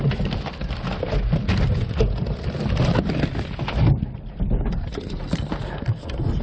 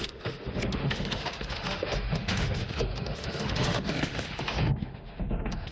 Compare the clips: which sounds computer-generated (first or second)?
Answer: second